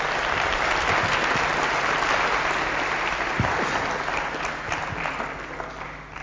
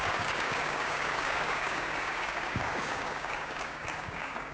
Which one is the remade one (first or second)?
second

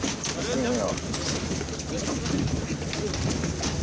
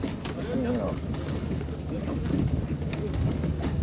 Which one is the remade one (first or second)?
second